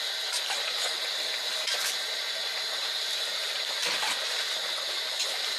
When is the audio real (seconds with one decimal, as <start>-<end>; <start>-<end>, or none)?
0.0-5.6